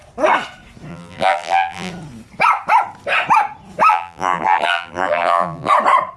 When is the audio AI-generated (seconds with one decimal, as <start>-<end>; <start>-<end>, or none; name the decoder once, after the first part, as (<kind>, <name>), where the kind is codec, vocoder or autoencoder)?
0.9-1.9 (vocoder, BigVGAN v2); 3.9-5.7

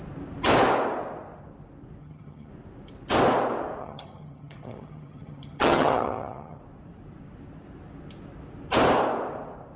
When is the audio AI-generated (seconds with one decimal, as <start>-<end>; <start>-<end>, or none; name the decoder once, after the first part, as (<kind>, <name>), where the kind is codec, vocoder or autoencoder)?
2.0-2.5 (vocoder, HiFi-GAN); 3.8-6.6

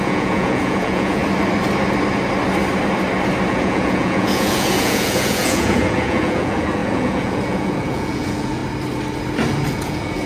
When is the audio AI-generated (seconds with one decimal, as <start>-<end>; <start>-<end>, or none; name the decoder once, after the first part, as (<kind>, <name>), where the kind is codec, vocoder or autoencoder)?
0.0-1.2 (vocoder, Vocos); 3.5-8.6; 9.7-10.3

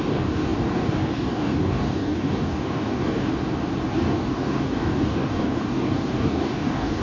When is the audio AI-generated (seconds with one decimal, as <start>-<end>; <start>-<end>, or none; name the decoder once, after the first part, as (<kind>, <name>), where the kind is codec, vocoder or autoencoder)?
0.0-3.3 (codec, DAC); 3.9-7.0

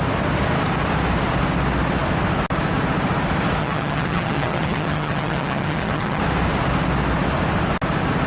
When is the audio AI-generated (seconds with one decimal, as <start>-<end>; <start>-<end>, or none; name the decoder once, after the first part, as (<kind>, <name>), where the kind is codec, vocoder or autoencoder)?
3.6-6.2 (vocoder, HiFi-GAN)

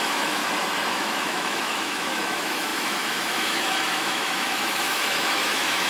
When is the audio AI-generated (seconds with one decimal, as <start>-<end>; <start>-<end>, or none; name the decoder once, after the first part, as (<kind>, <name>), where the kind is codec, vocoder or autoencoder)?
0.0-0.4 (autoencoder, DAC-VAE); 0.9-5.9

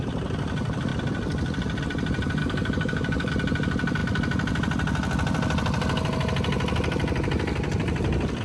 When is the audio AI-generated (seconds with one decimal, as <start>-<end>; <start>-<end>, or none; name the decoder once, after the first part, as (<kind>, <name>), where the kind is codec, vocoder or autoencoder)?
2.4-3.3 (codec, DAC)